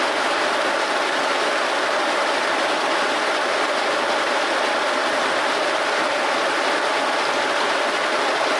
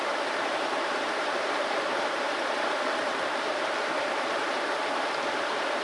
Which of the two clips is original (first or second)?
first